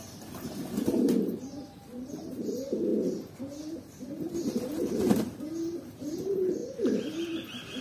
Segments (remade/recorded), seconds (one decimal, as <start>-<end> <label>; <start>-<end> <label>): 0.0-2.9 remade; 2.9-3.4 recorded; 3.4-6.6 remade; 6.6-7.3 recorded; 7.3-7.8 remade